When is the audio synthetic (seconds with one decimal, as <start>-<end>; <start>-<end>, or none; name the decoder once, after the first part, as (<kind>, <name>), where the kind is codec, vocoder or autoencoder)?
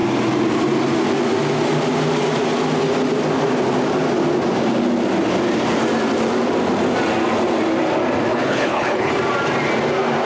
8.3-9.1 (codec, HILCodec)